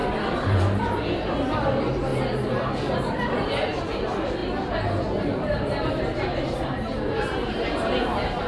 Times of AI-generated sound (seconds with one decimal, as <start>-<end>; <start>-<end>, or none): 0.0-4.4; 5.0-8.5